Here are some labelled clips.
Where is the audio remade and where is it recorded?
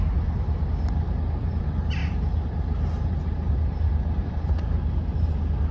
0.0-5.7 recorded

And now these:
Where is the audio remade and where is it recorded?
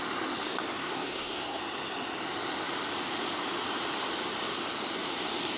0.0-0.8 recorded; 0.8-1.6 remade; 1.6-5.6 recorded